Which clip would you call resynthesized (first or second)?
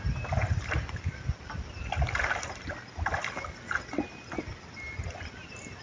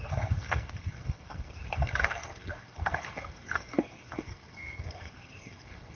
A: second